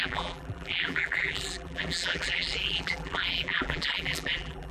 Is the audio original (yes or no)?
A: no